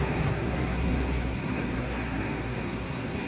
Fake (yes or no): yes